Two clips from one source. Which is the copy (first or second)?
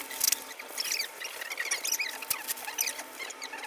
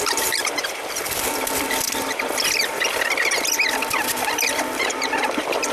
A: second